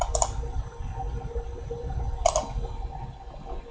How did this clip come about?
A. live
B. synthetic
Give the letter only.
B